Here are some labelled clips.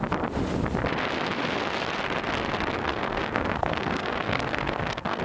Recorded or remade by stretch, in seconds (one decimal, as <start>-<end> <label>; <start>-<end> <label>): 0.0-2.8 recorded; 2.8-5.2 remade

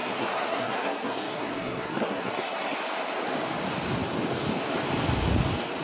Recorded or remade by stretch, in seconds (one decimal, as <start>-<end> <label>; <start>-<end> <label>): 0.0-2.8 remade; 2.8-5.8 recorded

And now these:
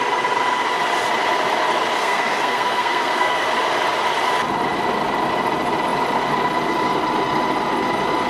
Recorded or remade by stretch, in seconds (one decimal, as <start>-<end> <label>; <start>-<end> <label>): 0.0-2.0 recorded; 2.0-3.5 remade; 3.5-8.3 recorded

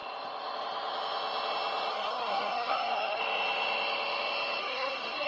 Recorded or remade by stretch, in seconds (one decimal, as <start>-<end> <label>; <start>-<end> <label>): 0.0-1.9 recorded; 1.9-3.2 remade; 3.2-4.6 recorded; 4.6-5.3 remade

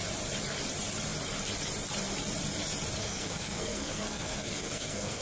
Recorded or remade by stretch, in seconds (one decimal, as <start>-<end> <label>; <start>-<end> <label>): 0.0-3.0 recorded; 3.0-5.2 remade

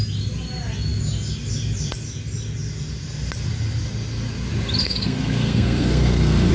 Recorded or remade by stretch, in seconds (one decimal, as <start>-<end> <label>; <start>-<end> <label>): 0.0-4.8 recorded; 4.8-6.5 remade